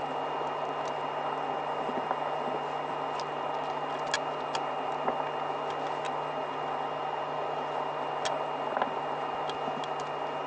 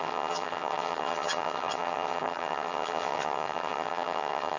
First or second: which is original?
first